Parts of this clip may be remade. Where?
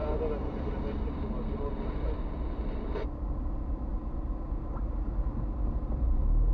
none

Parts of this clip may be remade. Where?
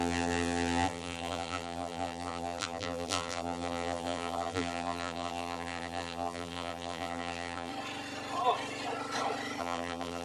0.0-7.7 (vocoder, BigVGAN v2); 9.6-10.2